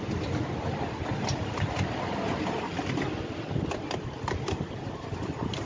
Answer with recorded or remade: recorded